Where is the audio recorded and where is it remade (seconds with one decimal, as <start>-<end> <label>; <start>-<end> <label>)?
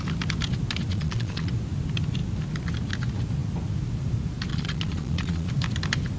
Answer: 0.0-0.9 recorded; 0.9-1.5 remade; 1.5-4.5 recorded; 4.5-5.5 remade; 5.5-6.2 recorded